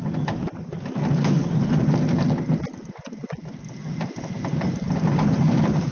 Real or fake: real